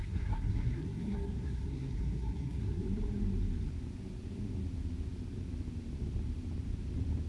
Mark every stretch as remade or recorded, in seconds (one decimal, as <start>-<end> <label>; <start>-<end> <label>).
0.0-2.8 remade; 2.8-7.3 recorded